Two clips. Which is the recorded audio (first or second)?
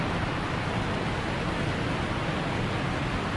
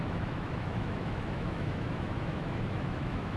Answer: first